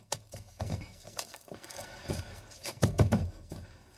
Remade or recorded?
remade